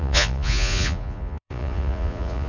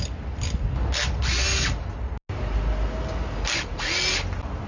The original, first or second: second